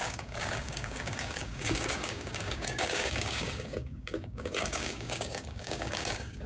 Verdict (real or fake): fake